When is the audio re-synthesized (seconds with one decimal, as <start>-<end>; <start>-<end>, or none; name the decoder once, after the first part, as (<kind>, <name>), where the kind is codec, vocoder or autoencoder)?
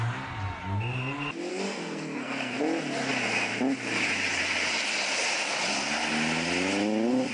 1.5-2.6 (codec, SNAC)